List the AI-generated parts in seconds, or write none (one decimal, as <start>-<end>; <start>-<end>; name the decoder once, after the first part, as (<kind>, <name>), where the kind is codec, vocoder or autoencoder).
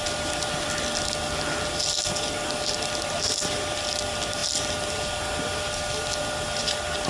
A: none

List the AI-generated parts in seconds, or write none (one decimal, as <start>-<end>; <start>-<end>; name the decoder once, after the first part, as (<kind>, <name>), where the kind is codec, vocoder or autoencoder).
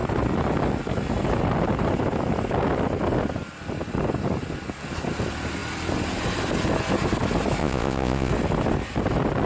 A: 7.6-8.3 (vocoder, Vocos)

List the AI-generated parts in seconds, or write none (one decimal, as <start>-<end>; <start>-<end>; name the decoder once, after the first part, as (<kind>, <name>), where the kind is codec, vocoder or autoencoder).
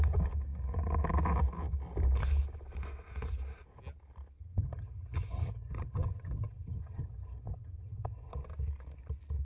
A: 4.4-8.3 (vocoder, HiFi-GAN)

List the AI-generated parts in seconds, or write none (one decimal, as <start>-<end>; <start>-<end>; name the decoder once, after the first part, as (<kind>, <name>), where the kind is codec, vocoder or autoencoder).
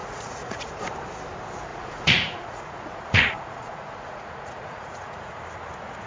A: 0.0-0.7 (vocoder, Vocos); 1.7-5.4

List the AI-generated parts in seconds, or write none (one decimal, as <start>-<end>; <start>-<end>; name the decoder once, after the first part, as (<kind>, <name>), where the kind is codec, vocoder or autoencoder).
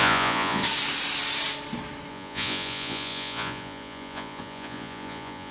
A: 0.0-0.6 (vocoder, Vocos); 2.1-5.5